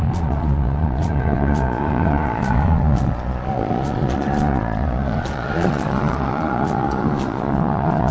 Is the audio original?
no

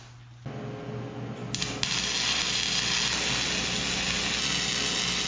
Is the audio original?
yes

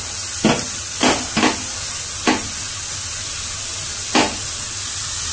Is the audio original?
yes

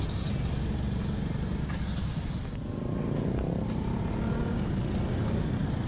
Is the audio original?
yes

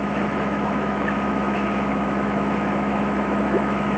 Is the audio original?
no